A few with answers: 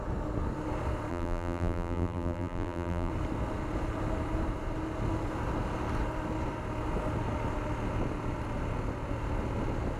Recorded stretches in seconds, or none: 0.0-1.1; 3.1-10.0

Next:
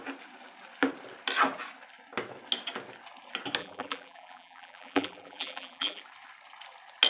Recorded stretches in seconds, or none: 0.0-3.6; 6.0-7.1

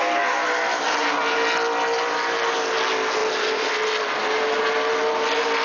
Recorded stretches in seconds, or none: 0.0-5.6

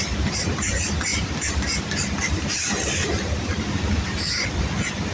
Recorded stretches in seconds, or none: 0.0-1.1; 4.2-5.1

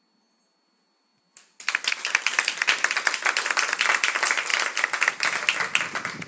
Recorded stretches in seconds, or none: 0.0-6.3

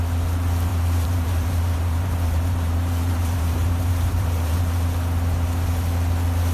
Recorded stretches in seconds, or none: 0.0-0.7; 4.6-6.5

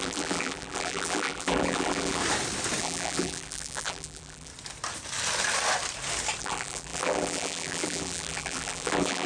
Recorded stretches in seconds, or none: 2.2-2.8; 4.5-6.4

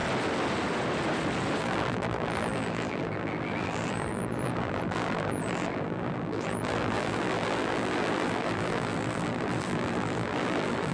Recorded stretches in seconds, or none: 0.0-1.6